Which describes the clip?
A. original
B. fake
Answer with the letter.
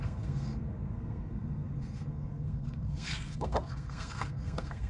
B